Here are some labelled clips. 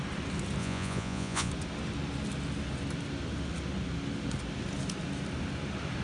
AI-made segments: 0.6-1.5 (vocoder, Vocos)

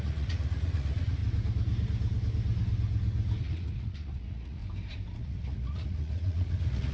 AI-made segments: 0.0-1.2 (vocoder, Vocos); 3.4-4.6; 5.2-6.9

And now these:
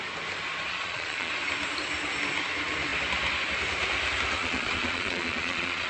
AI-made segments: 0.7-1.3 (vocoder, Vocos); 4.4-5.9

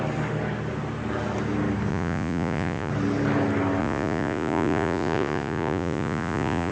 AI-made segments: 1.9-2.9 (vocoder, Vocos); 3.8-6.7